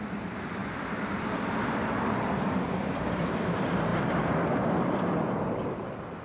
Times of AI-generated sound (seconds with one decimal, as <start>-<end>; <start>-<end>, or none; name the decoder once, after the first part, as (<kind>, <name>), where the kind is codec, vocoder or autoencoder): 0.0-6.2 (vocoder, BigVGAN v2)